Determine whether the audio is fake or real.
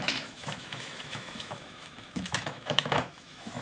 fake